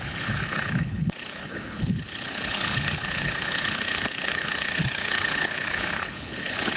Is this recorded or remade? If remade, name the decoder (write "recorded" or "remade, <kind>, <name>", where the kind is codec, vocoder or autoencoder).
remade, codec, HILCodec